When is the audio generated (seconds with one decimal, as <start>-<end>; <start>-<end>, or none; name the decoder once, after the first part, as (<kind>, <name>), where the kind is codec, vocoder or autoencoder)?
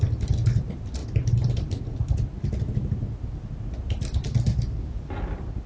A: none